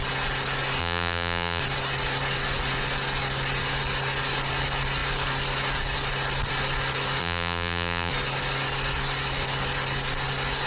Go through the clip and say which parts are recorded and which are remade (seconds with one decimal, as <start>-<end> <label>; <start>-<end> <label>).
0.0-0.8 recorded; 0.8-1.6 remade; 1.6-7.2 recorded; 7.2-8.1 remade; 8.1-10.7 recorded